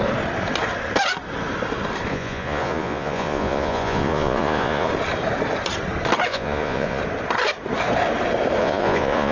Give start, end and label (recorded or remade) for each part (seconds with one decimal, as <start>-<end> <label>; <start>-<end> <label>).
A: 0.0-2.1 recorded; 2.1-4.9 remade; 4.9-6.3 recorded; 6.3-7.0 remade; 7.0-8.6 recorded; 8.6-9.3 remade